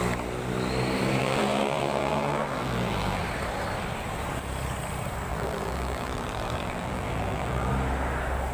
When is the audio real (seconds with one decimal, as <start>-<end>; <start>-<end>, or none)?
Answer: 0.0-1.2; 3.2-5.3; 7.7-8.5